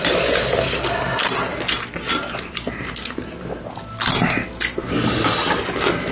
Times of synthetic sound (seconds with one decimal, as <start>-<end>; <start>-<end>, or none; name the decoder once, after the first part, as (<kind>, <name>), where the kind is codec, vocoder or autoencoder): none